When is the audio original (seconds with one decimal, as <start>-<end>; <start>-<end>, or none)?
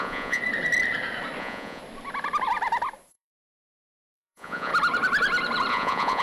0.4-1.4; 1.8-3.1; 4.7-5.7